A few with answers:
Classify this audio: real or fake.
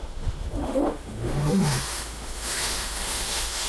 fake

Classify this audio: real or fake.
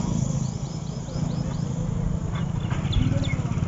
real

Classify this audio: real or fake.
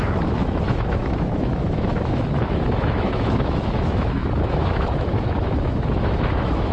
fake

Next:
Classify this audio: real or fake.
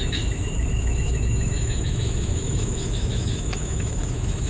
fake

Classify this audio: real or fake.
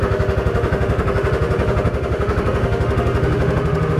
fake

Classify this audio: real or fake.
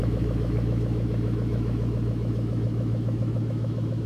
fake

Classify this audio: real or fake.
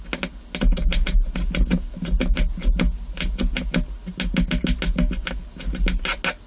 real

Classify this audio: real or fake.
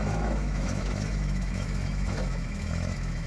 fake